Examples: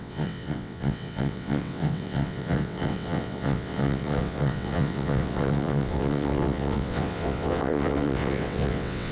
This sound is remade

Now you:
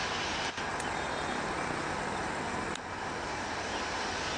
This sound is recorded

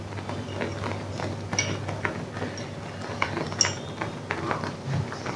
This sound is recorded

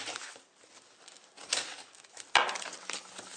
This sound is recorded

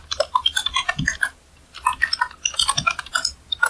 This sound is recorded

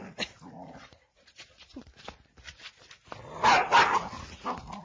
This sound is recorded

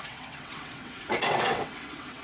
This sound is remade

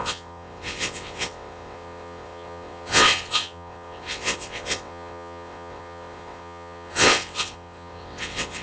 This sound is remade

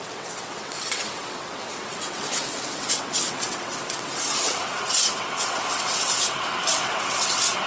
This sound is remade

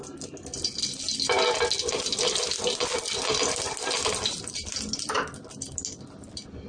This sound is recorded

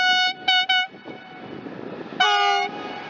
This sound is recorded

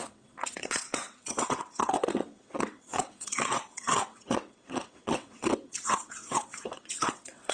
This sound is remade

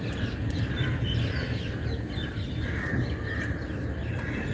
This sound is recorded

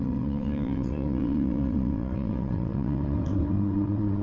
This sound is remade